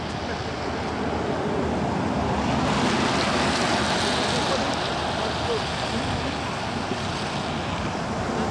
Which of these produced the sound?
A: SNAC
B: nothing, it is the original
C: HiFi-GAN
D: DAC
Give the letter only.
B